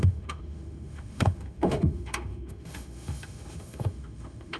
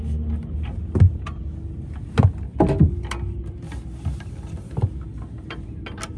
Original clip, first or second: second